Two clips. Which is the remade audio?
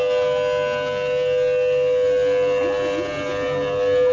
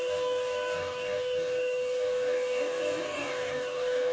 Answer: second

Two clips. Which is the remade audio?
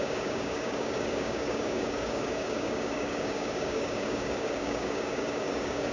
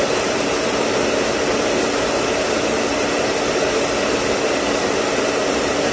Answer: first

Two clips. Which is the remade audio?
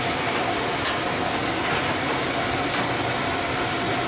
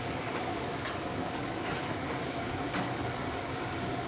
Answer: second